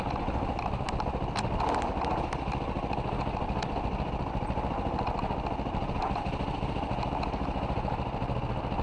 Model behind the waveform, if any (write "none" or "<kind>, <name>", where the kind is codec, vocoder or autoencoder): none